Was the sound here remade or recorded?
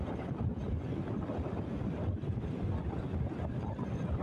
recorded